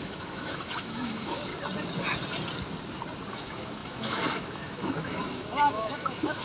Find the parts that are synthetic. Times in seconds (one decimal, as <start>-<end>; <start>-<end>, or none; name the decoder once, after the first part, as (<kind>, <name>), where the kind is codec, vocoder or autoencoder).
0.0-1.5 (autoencoder, DAC-VAE); 3.3-6.4